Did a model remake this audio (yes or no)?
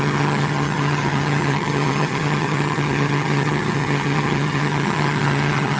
yes